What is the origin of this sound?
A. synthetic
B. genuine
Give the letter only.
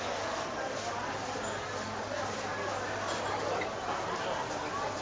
B